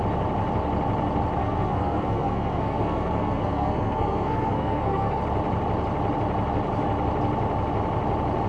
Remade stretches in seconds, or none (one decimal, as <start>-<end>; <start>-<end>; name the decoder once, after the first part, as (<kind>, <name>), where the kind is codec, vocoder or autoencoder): 1.4-5.2 (codec, SNAC)